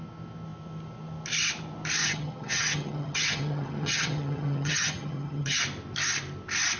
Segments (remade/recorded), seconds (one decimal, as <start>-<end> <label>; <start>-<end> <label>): 0.0-2.0 recorded; 2.0-5.6 remade; 5.6-6.8 recorded